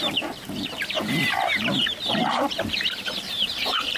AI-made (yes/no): yes